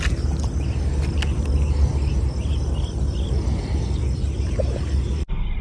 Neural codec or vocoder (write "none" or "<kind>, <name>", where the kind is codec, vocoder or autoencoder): none